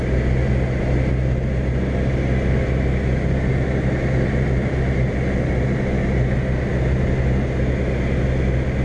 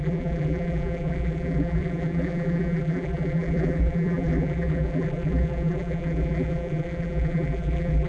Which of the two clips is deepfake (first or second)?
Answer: second